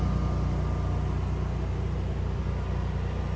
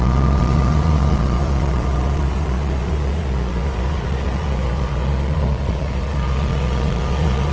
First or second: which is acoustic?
first